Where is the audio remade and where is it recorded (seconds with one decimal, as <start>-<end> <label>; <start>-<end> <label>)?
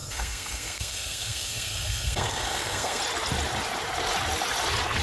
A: 0.0-3.0 remade; 3.0-5.0 recorded